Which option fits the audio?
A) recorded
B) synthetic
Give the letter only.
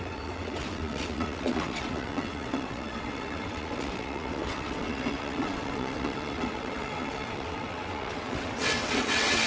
B